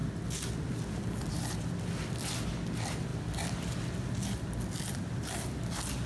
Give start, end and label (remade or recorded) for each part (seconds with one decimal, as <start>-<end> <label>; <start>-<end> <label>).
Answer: 0.0-6.1 recorded